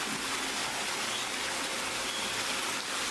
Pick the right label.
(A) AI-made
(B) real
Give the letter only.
B